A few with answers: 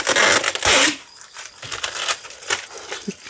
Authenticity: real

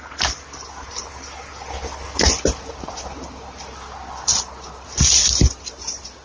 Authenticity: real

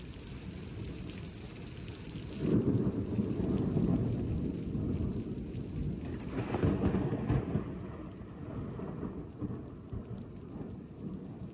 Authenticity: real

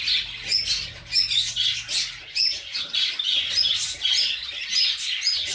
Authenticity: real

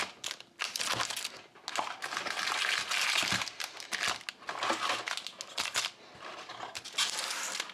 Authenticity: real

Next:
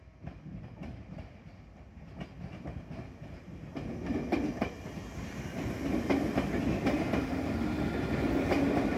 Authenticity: real